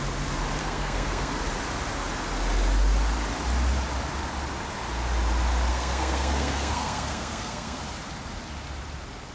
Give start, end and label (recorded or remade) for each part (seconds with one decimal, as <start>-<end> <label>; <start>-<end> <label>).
0.0-0.6 recorded; 0.6-1.3 remade; 1.3-5.7 recorded; 5.7-7.8 remade; 7.8-9.3 recorded